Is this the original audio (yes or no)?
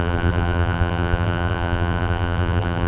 no